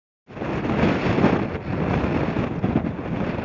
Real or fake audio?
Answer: real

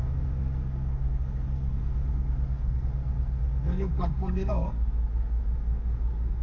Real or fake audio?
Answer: fake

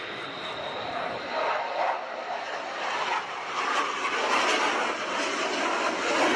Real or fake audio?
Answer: real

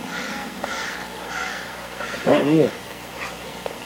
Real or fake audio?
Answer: fake